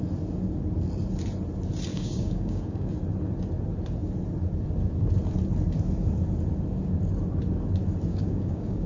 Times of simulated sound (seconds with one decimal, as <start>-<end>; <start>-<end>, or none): 1.9-2.9; 8.1-8.9